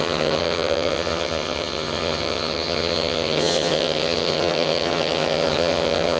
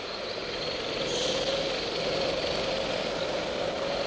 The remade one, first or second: first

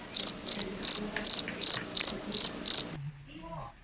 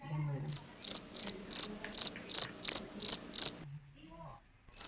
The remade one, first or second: first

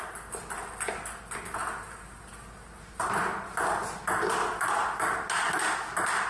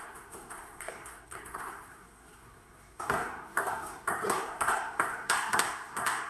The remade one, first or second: second